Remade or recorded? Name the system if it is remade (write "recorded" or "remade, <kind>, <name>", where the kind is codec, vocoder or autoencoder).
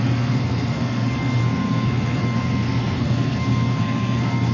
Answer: remade, codec, SNAC